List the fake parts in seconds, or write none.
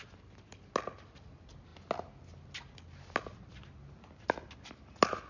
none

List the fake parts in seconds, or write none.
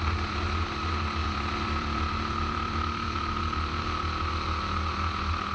1.2-3.4